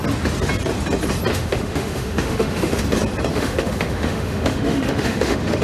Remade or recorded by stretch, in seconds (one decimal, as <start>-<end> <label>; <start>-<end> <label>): 0.0-1.3 recorded; 1.3-2.8 remade; 2.8-3.3 recorded; 3.3-5.6 remade